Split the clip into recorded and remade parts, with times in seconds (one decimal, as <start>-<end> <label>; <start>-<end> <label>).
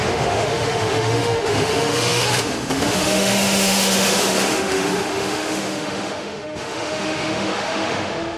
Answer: 0.0-8.4 remade